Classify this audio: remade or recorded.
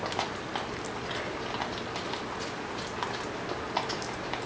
recorded